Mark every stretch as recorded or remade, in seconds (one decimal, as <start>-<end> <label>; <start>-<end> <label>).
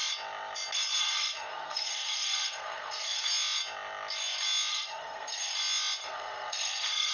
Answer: 0.0-1.0 recorded; 1.0-3.3 remade; 3.3-4.7 recorded; 4.7-5.5 remade; 5.5-6.0 recorded; 6.0-7.1 remade